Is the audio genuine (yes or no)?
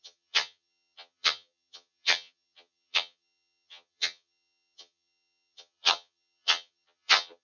no